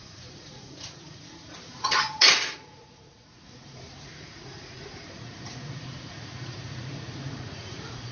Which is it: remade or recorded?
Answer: remade